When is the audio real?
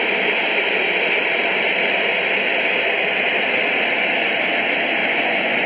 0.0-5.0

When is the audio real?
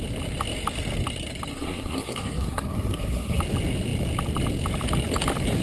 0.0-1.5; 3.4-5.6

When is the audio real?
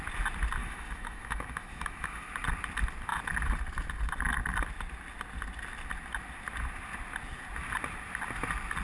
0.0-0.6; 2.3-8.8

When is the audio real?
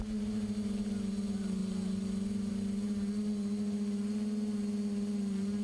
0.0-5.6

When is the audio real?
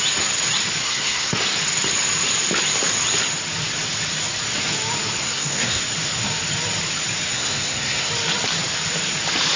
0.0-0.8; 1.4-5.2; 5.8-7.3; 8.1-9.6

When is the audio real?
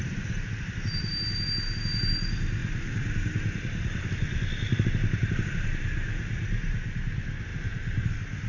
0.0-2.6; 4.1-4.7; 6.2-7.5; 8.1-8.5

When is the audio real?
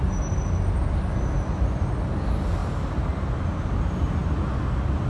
0.0-5.1